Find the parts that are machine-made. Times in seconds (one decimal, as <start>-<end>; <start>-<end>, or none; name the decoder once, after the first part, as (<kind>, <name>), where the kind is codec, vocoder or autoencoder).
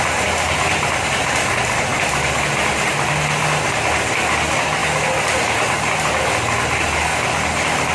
1.9-2.7 (vocoder, BigVGAN v2)